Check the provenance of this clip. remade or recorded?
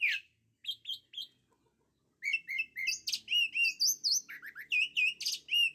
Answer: recorded